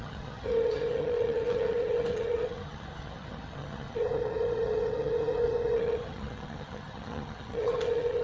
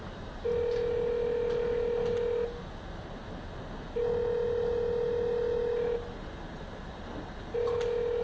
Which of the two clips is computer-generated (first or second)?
first